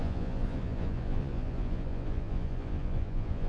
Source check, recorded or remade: remade